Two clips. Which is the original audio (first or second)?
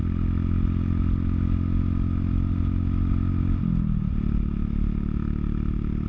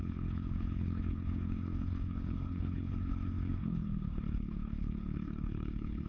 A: first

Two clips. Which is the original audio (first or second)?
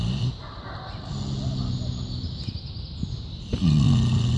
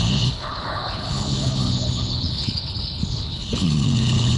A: first